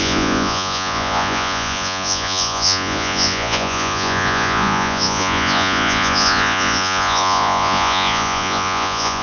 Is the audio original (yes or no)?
no